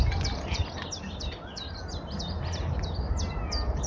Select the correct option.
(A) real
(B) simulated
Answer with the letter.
A